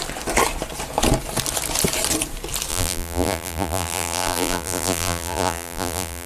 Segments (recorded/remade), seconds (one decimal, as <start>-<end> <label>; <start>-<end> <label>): 0.0-2.7 recorded; 2.7-6.3 remade